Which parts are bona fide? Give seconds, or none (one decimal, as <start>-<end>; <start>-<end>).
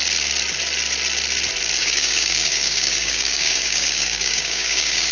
0.0-1.8